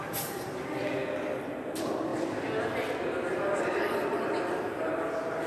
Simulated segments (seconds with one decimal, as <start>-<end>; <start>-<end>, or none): 0.0-2.1; 4.5-5.5